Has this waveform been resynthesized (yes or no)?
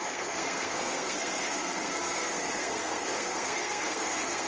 yes